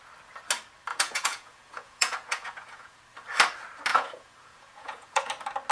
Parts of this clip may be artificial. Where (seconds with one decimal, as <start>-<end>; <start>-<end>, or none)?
0.9-3.0; 3.9-5.3